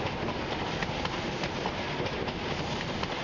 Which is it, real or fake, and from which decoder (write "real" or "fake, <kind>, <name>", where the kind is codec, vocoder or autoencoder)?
real